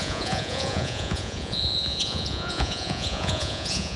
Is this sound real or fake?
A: fake